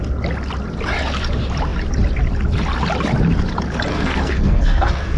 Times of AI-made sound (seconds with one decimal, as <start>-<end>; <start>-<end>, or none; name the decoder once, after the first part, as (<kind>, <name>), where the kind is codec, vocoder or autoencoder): 3.9-5.2 (codec, SNAC)

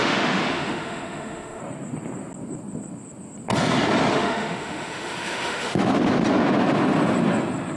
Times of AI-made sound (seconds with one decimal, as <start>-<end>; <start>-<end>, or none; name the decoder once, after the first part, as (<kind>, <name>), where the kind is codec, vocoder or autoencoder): 0.0-1.6 (autoencoder, DAC-VAE); 4.1-5.8